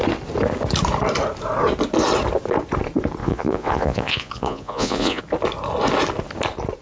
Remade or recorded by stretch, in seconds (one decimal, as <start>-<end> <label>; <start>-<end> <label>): 0.0-3.2 recorded; 3.2-5.2 remade; 5.2-6.8 recorded